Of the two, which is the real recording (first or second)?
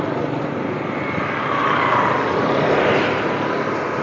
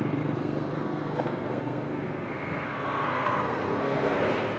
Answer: first